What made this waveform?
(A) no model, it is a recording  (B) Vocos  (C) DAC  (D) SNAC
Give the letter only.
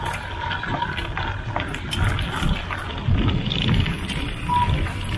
A